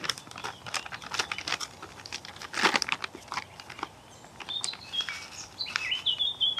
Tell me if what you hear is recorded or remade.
recorded